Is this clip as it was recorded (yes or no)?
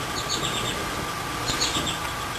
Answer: yes